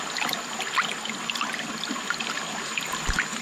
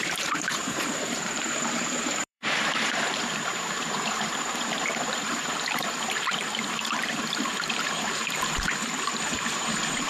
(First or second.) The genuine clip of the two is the first